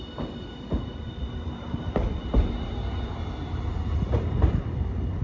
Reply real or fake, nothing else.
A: fake